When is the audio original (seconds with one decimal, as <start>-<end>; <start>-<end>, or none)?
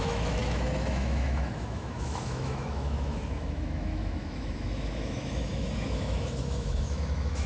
none